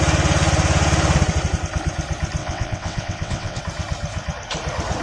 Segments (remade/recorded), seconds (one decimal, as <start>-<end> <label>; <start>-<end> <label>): 0.0-2.4 recorded; 2.4-3.6 remade; 3.6-5.0 recorded